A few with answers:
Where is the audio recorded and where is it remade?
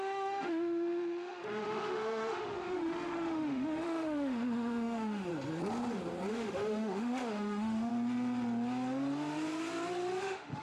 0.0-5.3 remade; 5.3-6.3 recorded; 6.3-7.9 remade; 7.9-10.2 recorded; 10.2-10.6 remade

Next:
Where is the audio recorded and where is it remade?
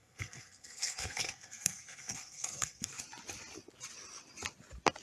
0.0-3.0 remade; 3.0-5.0 recorded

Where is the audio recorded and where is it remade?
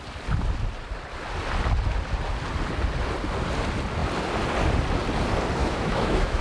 0.0-5.6 recorded; 5.6-6.4 remade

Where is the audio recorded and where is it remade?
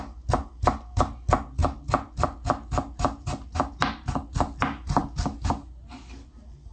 0.0-6.7 recorded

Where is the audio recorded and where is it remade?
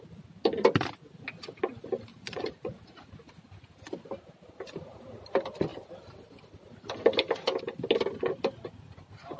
0.0-2.1 recorded; 2.1-3.1 remade; 3.1-9.4 recorded